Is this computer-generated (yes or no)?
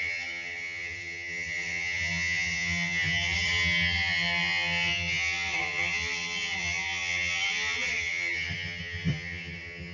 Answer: yes